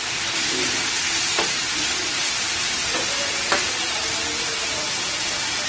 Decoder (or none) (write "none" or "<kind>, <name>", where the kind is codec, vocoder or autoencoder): none